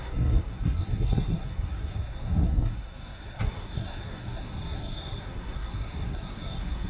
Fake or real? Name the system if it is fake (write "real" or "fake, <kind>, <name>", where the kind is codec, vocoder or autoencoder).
fake, codec, SNAC